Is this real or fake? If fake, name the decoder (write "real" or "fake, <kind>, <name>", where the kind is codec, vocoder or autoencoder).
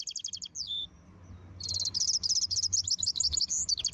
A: real